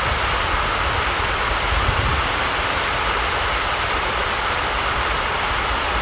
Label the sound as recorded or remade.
remade